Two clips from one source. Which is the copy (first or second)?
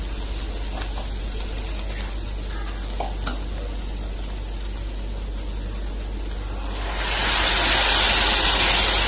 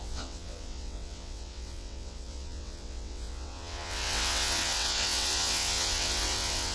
second